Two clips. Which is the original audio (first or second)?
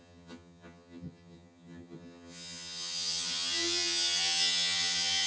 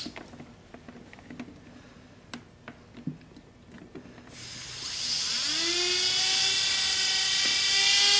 second